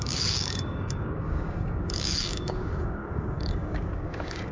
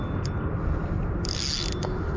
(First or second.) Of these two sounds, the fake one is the first